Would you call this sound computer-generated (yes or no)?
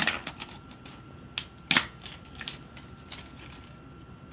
no